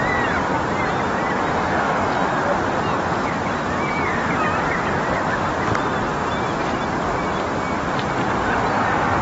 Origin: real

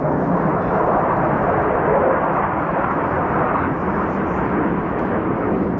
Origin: real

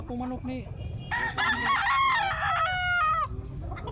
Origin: real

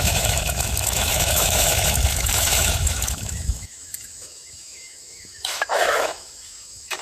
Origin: fake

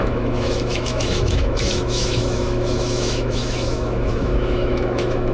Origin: fake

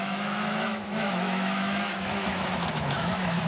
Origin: fake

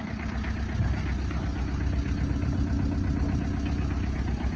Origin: real